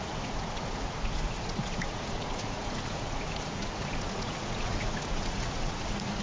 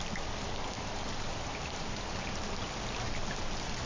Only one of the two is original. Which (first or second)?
second